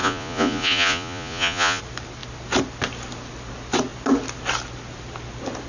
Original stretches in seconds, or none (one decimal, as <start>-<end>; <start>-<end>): 1.8-5.7